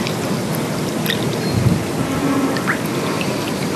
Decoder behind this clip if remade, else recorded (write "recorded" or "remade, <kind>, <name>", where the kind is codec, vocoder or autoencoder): recorded